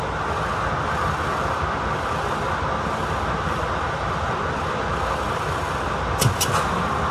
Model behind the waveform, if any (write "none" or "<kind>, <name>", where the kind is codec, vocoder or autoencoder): none